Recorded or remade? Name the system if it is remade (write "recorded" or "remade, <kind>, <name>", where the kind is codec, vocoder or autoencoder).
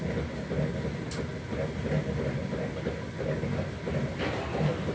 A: recorded